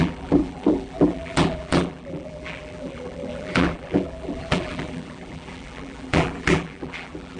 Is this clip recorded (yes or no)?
no